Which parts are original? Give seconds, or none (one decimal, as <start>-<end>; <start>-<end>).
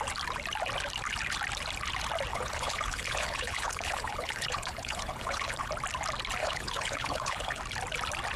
0.0-2.3; 5.7-6.4; 7.6-8.4